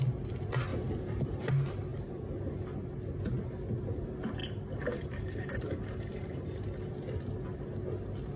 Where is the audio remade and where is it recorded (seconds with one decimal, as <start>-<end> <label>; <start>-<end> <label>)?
0.0-0.7 recorded; 0.7-1.5 remade; 1.5-4.4 recorded; 4.4-6.6 remade; 6.6-8.4 recorded

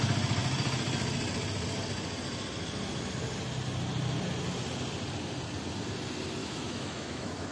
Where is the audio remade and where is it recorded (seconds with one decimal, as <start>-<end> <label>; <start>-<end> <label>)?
0.0-6.4 recorded; 6.4-7.5 remade